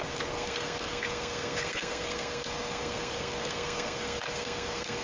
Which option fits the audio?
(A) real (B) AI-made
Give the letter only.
B